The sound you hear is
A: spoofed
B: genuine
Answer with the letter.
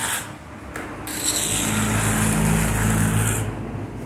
B